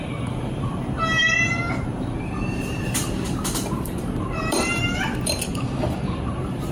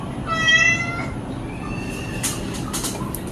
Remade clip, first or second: first